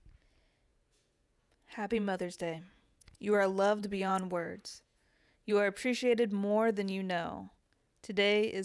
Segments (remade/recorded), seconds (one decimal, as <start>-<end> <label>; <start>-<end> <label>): 0.0-0.7 recorded; 0.7-3.2 remade; 3.2-3.8 recorded; 3.8-5.5 remade; 5.5-8.6 recorded